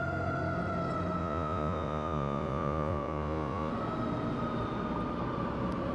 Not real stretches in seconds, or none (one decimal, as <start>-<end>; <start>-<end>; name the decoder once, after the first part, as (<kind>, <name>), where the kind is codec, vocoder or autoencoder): 1.2-3.7 (vocoder, Vocos)